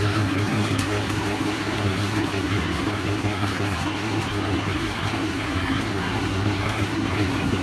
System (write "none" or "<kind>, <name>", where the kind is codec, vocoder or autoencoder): codec, SNAC